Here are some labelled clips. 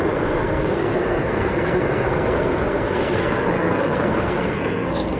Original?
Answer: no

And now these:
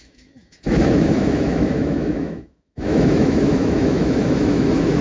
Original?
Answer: no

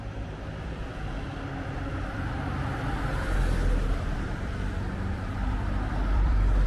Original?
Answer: no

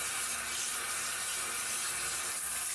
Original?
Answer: yes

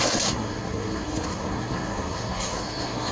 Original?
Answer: no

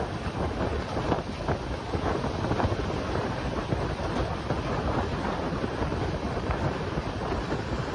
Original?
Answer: yes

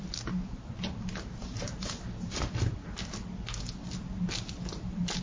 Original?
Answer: yes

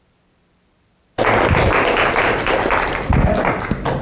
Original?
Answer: yes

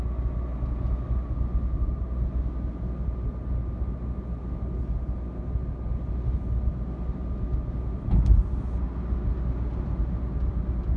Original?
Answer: yes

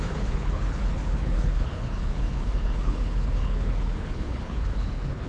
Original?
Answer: no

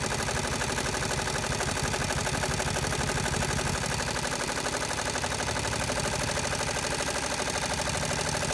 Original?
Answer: yes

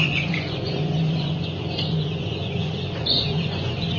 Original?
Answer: no